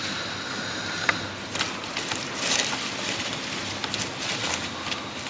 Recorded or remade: recorded